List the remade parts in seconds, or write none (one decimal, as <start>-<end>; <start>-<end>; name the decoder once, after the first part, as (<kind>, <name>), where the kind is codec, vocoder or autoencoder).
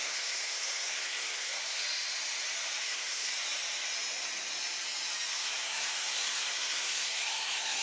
0.0-1.8 (codec, SNAC); 2.8-3.3; 5.3-7.8